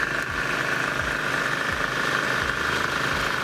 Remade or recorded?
recorded